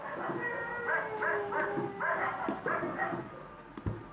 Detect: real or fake real